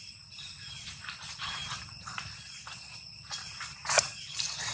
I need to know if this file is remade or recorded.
recorded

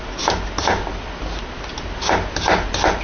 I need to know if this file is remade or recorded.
recorded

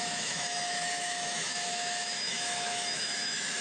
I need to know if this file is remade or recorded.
remade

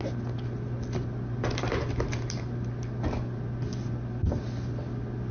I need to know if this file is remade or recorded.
recorded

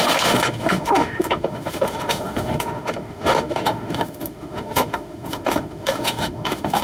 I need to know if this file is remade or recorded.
remade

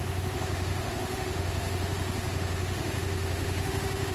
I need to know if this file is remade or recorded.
remade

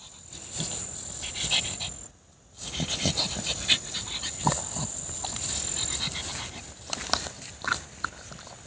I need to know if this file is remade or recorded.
recorded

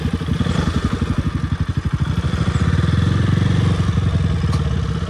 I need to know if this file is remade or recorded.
recorded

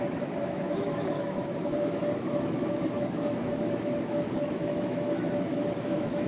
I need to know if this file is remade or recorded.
remade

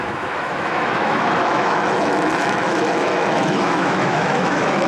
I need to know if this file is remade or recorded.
remade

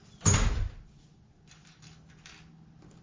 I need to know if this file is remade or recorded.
recorded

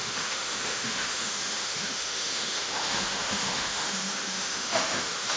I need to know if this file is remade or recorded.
remade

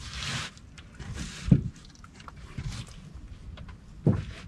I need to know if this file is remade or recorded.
recorded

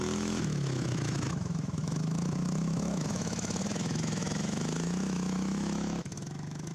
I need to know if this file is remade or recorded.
remade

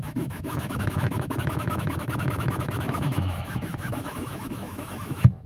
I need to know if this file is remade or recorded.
remade